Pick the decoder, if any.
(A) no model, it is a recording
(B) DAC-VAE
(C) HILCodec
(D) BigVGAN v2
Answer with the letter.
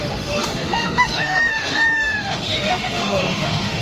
B